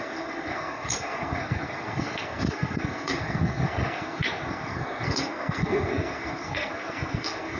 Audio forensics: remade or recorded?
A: remade